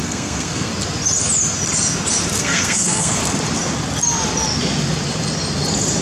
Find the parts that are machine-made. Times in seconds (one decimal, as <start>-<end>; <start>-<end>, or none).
0.0-0.7; 2.4-3.2